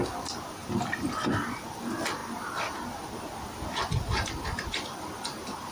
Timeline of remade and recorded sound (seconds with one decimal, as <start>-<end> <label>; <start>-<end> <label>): 0.0-5.7 recorded